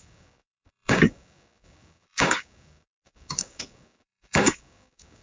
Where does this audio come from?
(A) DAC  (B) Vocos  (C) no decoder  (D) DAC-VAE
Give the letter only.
A